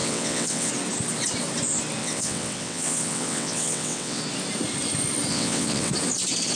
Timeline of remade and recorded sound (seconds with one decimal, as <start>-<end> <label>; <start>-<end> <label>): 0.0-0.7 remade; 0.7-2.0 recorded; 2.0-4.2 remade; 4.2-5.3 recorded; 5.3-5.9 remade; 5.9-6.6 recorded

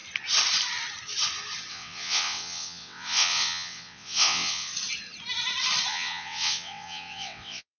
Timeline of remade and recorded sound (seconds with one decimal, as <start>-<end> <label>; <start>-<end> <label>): 0.0-1.7 recorded; 1.7-4.7 remade; 4.7-5.9 recorded; 5.9-7.8 remade

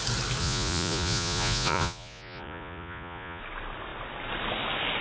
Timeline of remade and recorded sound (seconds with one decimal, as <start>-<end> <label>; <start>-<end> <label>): 0.0-0.4 recorded; 0.4-3.4 remade; 3.4-5.0 recorded